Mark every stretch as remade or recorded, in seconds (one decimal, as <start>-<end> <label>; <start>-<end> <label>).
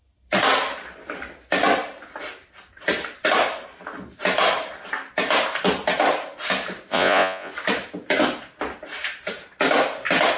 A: 0.0-6.9 recorded; 6.9-7.5 remade; 7.5-10.4 recorded